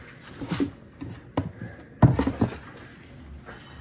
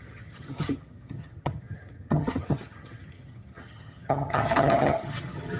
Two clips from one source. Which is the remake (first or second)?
second